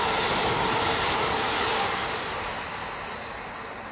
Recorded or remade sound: recorded